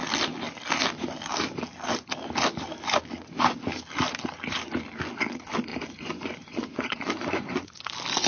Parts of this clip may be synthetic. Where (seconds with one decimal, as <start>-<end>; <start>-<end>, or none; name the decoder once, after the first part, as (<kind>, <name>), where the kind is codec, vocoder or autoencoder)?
5.7-7.8 (vocoder, Vocos)